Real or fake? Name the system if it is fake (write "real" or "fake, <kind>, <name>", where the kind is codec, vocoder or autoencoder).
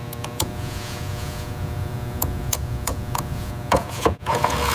fake, vocoder, Vocos